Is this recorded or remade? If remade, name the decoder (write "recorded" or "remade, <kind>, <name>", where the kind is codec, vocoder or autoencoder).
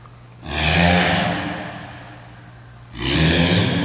recorded